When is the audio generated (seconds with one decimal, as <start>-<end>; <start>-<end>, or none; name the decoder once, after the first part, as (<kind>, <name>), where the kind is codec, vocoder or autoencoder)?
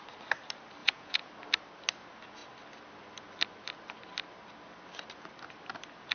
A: 0.8-1.3 (vocoder, Vocos)